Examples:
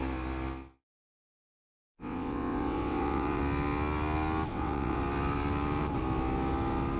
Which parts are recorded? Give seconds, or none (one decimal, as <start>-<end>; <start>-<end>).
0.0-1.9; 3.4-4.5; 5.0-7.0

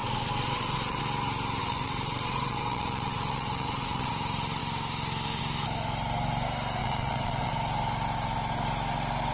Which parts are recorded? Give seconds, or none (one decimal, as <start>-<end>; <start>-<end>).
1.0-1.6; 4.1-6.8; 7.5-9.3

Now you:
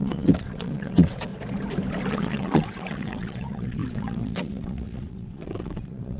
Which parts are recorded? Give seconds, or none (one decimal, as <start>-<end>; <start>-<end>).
1.3-2.1

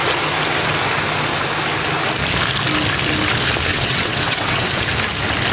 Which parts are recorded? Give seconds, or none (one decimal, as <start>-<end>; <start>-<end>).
0.0-3.7; 4.7-5.5

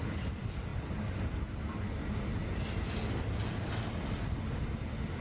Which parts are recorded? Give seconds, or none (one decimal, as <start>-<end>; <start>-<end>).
0.0-5.2

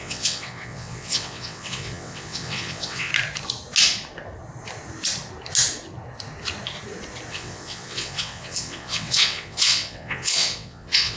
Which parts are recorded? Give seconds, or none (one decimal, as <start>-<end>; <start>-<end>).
3.1-7.3

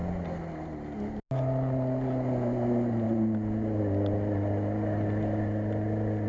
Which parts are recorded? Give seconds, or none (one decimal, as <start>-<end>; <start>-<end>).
0.0-6.3

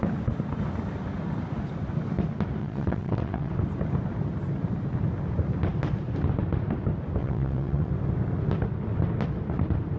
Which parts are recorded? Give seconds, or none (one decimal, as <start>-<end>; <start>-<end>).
0.0-2.6; 3.5-7.2; 7.9-10.0